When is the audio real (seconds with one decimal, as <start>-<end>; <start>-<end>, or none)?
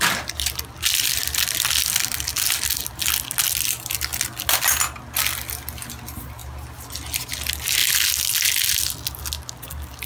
0.0-10.1